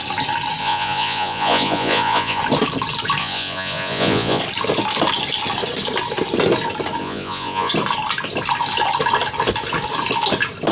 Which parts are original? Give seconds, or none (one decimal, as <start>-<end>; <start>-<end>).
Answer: 0.0-0.6; 2.4-3.2; 4.4-7.0; 7.7-10.7